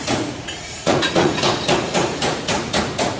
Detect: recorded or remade remade